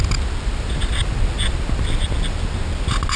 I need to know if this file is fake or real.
real